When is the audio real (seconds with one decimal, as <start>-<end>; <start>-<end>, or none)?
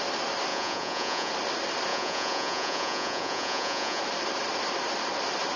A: 0.0-0.5; 1.3-1.9; 4.0-5.6